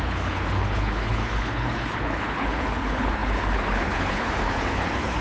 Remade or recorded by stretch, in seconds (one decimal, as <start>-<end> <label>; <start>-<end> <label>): 0.0-5.2 remade